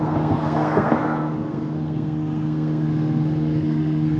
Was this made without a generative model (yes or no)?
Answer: no